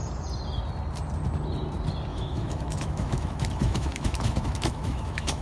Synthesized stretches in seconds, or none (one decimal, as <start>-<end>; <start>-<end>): 2.1-5.4